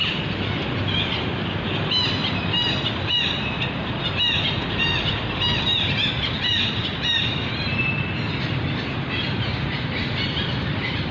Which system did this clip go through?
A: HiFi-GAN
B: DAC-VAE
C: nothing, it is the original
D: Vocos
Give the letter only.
C